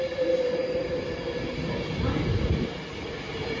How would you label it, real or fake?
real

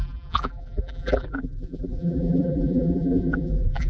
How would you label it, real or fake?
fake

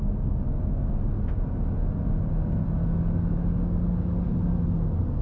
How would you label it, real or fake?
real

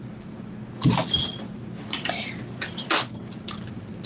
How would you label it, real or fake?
real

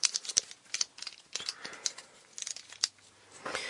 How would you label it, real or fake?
real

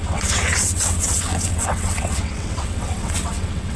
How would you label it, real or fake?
fake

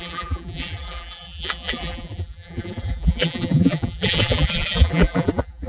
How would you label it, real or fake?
fake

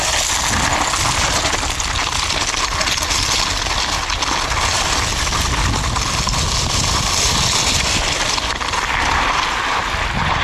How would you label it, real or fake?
real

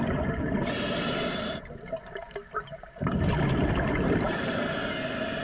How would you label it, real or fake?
real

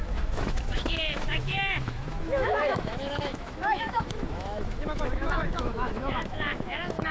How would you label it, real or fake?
fake